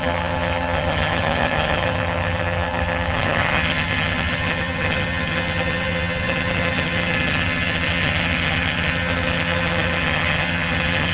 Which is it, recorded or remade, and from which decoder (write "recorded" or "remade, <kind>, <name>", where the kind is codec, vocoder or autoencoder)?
remade, vocoder, HiFi-GAN